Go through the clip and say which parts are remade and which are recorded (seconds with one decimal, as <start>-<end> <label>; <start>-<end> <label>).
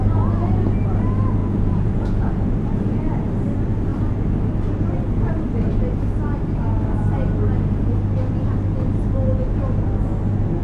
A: 0.0-1.4 recorded; 1.4-2.7 remade; 2.7-10.6 recorded